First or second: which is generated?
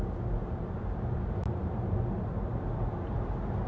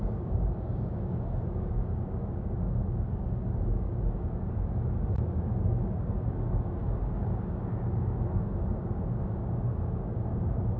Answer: second